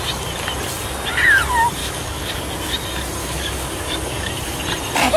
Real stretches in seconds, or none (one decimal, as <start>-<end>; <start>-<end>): 0.0-1.8; 2.4-3.2; 4.3-5.2